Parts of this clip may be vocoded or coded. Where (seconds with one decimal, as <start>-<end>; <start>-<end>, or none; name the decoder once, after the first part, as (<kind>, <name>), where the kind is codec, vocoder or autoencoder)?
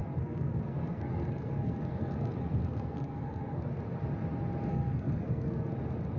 0.0-3.7 (codec, SNAC); 4.7-5.7